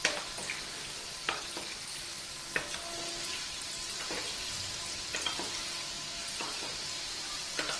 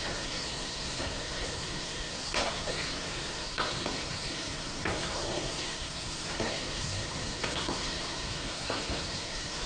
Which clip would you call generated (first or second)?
second